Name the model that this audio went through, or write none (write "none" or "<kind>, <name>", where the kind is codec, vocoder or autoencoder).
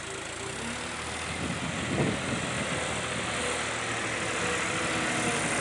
none